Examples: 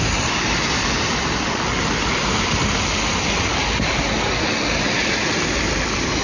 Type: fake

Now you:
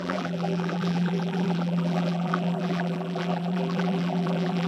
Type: fake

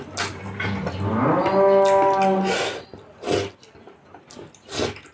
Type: real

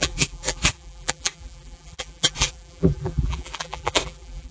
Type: fake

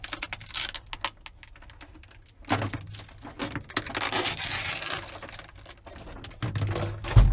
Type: real